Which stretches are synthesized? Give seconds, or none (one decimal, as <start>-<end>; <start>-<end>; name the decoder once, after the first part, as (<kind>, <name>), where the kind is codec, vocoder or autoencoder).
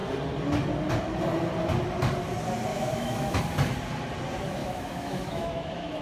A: 2.7-3.4 (autoencoder, DAC-VAE); 4.6-6.0